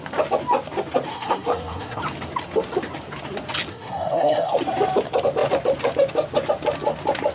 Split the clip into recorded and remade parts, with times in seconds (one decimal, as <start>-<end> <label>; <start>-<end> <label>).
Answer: 0.0-1.1 recorded; 1.1-2.0 remade; 2.0-3.7 recorded; 3.7-4.6 remade; 4.6-7.3 recorded